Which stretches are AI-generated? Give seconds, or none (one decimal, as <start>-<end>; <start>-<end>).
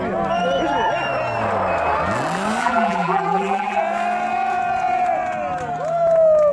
2.6-3.8